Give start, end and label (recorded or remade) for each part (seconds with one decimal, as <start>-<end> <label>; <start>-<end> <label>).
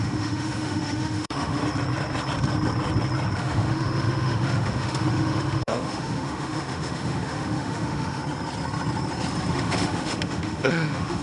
0.0-1.6 remade; 1.6-3.4 recorded; 3.4-8.2 remade; 8.2-9.5 recorded; 9.5-11.2 remade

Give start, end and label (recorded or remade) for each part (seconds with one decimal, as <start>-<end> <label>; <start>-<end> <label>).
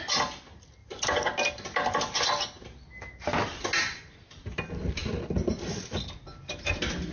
0.0-7.1 recorded